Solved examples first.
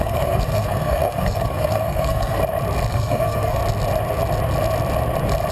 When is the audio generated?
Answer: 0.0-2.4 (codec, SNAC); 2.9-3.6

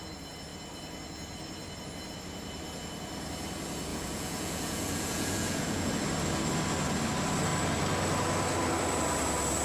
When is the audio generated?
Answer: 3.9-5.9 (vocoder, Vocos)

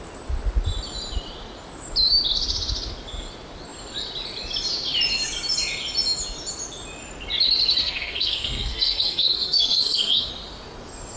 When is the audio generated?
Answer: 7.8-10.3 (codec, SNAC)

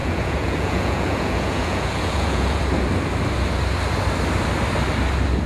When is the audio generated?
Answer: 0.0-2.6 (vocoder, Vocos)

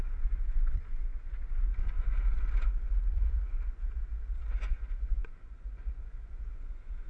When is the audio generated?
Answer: 0.0-1.7 (vocoder, Vocos); 3.1-7.1

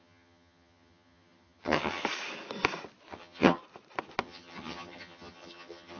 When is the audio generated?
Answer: 0.0-2.0 (vocoder, HiFi-GAN); 3.1-3.6; 4.2-6.0